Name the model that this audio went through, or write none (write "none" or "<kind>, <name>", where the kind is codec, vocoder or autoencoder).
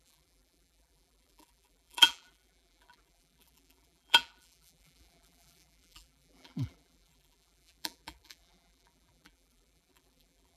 vocoder, BigVGAN v2